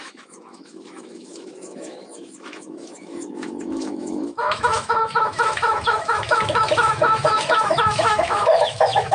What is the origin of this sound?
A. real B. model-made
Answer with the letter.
B